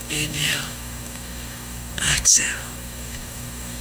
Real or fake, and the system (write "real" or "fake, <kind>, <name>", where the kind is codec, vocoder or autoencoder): fake, codec, DAC